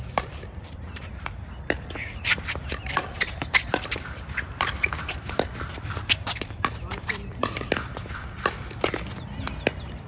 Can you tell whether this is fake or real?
fake